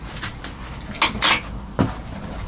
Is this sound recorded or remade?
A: recorded